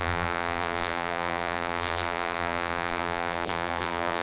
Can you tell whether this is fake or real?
fake